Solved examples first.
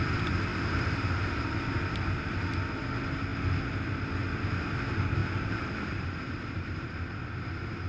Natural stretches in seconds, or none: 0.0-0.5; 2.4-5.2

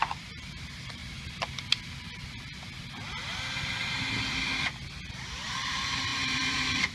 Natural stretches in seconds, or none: 1.0-5.1